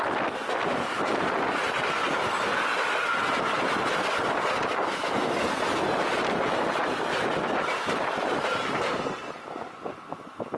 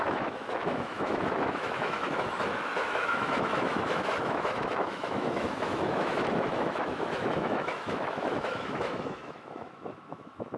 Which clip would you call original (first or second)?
first